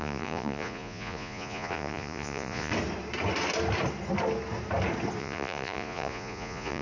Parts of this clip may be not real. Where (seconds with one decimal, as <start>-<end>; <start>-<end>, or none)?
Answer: 0.0-2.7; 5.2-6.8